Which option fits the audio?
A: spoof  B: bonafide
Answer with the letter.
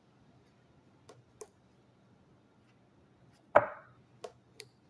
B